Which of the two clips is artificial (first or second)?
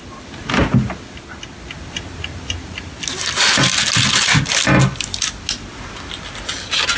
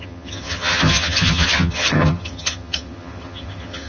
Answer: second